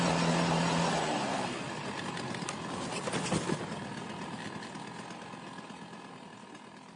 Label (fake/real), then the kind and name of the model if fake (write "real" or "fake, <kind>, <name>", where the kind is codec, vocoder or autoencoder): real